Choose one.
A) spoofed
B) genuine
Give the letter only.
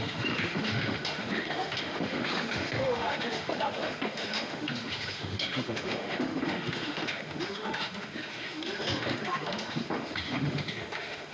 A